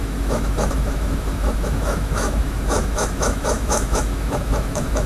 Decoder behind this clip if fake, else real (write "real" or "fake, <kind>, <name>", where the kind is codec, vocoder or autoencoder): fake, autoencoder, DAC-VAE